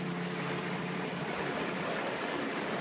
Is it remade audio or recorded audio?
remade